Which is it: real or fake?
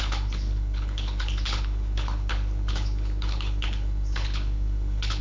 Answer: fake